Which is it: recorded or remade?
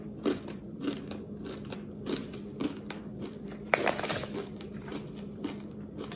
remade